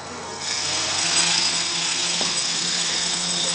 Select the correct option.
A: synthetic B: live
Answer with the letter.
A